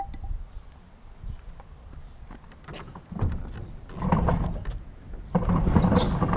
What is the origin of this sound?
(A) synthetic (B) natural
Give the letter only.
B